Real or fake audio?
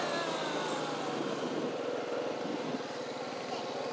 real